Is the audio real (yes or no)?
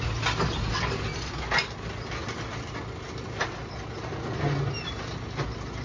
yes